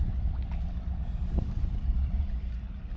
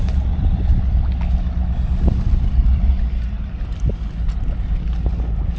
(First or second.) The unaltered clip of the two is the second